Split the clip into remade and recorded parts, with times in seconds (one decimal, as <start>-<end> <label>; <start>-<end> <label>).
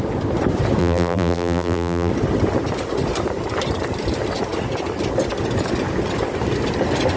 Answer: 0.0-0.8 recorded; 0.8-2.1 remade; 2.1-7.2 recorded